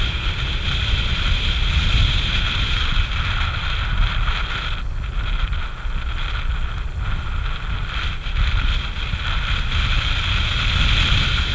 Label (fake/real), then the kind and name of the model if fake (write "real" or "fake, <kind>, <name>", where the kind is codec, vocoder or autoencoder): real